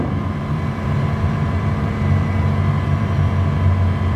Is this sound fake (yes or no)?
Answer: yes